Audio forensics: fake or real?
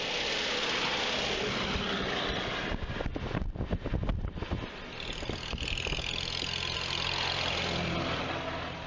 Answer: real